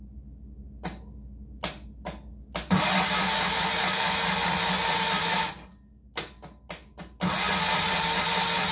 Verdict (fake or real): real